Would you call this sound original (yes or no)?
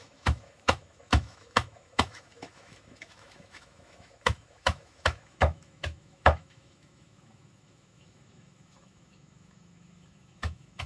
no